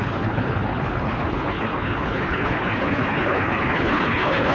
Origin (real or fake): fake